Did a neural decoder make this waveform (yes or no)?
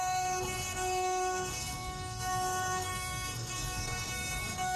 yes